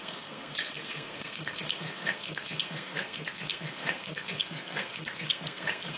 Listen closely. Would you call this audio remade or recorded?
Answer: remade